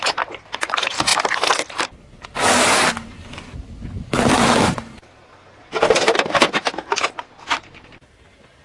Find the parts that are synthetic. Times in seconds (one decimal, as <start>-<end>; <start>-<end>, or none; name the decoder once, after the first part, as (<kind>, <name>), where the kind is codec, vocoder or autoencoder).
1.1-1.9 (vocoder, BigVGAN v2)

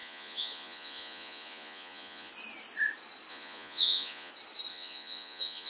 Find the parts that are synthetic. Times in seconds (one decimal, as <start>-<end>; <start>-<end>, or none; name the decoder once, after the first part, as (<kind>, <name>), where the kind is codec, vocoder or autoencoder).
0.0-2.3 (vocoder, Vocos); 3.3-4.3; 4.7-5.7

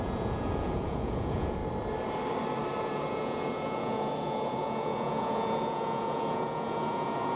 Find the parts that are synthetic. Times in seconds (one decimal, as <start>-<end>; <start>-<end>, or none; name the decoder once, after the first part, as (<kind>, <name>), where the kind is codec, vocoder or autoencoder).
0.0-1.6 (vocoder, Vocos); 2.8-7.4

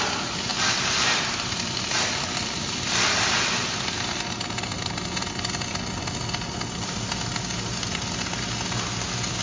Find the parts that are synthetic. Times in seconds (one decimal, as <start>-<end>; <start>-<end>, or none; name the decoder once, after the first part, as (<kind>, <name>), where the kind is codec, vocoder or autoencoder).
0.5-4.2 (vocoder, BigVGAN v2)